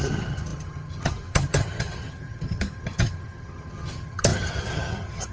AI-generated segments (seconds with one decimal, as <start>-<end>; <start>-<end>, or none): 0.0-5.3